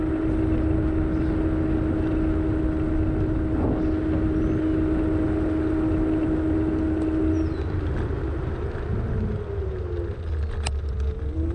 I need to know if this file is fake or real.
real